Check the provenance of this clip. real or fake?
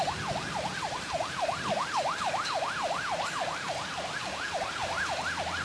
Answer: real